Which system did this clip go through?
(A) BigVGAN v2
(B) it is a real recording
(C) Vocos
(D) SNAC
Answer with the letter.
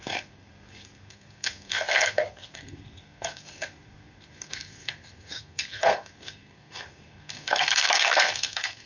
D